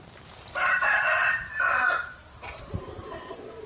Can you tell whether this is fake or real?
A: fake